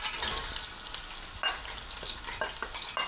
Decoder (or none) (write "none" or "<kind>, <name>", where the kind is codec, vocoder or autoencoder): none